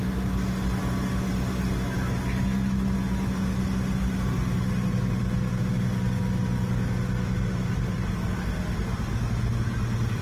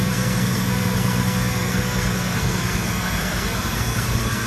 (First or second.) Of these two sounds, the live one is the first